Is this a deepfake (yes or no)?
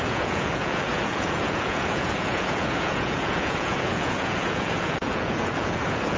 yes